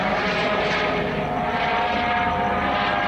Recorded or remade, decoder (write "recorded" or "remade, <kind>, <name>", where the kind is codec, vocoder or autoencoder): recorded